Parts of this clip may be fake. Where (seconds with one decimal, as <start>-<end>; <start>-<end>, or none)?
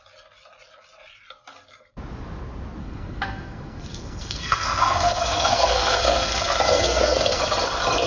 2.8-7.4